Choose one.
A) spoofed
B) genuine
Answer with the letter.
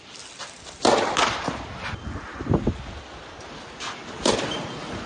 B